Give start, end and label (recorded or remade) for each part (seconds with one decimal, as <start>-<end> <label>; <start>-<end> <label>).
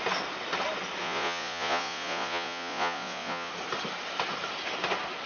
0.0-1.0 recorded; 1.0-3.5 remade; 3.5-5.3 recorded